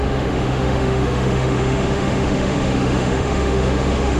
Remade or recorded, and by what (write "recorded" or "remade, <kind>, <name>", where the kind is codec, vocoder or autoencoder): remade, autoencoder, DAC-VAE